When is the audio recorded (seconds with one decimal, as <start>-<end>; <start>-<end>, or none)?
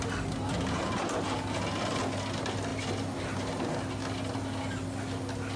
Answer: 0.0-5.6